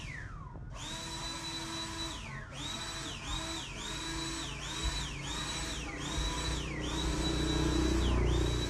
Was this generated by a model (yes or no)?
no